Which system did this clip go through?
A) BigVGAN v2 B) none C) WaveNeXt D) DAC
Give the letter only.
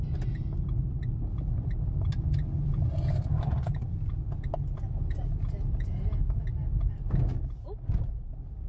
B